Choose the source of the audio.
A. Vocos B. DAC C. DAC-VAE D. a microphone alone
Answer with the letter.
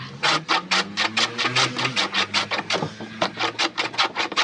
D